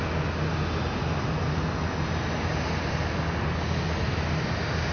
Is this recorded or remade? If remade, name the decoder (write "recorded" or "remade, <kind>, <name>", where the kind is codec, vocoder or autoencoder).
recorded